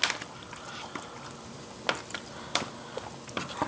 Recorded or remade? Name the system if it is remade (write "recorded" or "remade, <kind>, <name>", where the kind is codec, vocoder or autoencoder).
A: recorded